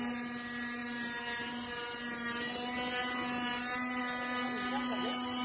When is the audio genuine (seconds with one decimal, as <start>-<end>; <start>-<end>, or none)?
0.0-5.4